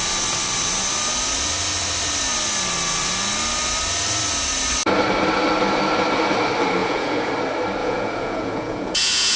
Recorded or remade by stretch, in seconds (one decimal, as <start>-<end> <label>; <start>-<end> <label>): 0.0-6.8 recorded; 6.8-7.3 remade; 7.3-7.8 recorded; 7.8-9.4 remade